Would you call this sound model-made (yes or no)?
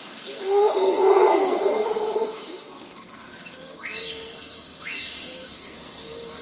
yes